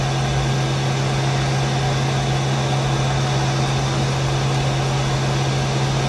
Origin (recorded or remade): recorded